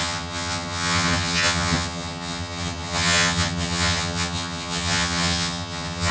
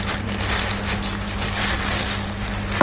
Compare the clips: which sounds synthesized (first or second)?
first